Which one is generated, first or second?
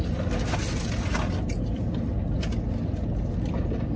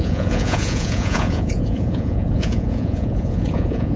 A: second